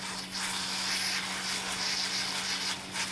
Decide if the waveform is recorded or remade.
recorded